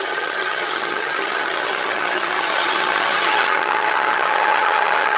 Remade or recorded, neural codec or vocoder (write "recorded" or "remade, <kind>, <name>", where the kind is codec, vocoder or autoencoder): remade, vocoder, HiFi-GAN